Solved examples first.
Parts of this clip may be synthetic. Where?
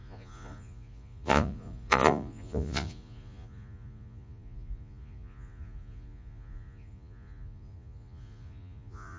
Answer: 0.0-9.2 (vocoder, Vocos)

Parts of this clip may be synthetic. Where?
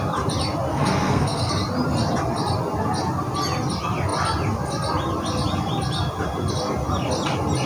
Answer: 0.7-1.5 (codec, SNAC)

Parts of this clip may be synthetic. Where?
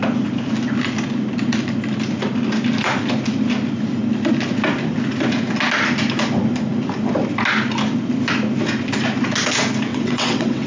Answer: 9.9-10.7 (vocoder, WaveNeXt)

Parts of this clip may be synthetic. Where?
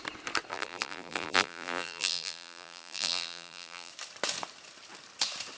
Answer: 0.5-3.9 (vocoder, BigVGAN v2)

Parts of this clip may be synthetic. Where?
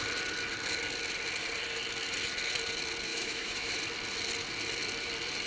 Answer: 3.1-3.7 (autoencoder, DAC-VAE)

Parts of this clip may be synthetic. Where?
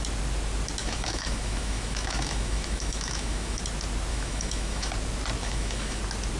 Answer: 0.8-3.6 (autoencoder, DAC-VAE); 4.1-4.9; 5.4-6.0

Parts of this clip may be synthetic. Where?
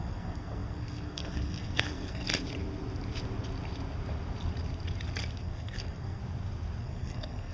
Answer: 0.0-2.3 (codec, SNAC); 5.4-6.2; 6.8-7.5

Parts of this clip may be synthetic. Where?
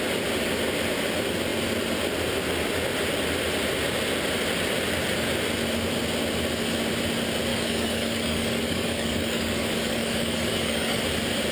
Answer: 7.5-11.0 (codec, DAC)